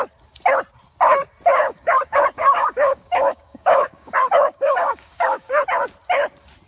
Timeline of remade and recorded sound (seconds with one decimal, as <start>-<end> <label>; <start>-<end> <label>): 0.0-1.6 recorded; 1.6-5.6 remade; 5.6-6.7 recorded